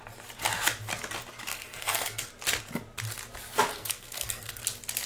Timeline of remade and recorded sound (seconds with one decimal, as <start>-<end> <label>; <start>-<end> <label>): 0.0-1.5 recorded; 1.5-2.3 remade; 2.3-3.7 recorded; 3.7-4.6 remade; 4.6-5.1 recorded